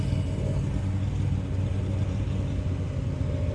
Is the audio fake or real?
real